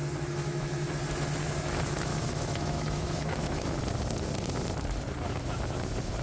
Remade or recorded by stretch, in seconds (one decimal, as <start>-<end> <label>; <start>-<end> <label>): 0.0-0.9 remade; 0.9-1.4 recorded; 1.4-3.8 remade; 3.8-6.2 recorded